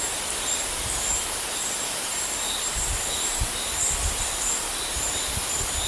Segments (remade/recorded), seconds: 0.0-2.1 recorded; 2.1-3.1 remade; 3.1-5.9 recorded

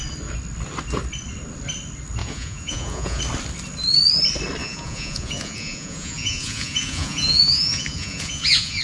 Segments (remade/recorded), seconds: 0.0-2.2 recorded; 2.2-3.2 remade; 3.2-4.6 recorded; 4.6-8.8 remade

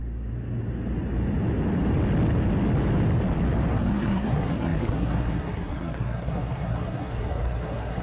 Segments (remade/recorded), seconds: 0.0-3.7 recorded; 3.7-8.0 remade

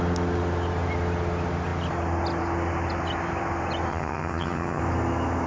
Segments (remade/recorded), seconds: 0.0-3.9 recorded; 3.9-4.8 remade; 4.8-5.5 recorded